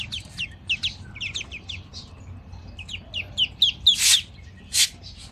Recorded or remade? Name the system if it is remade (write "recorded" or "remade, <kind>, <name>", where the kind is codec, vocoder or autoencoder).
recorded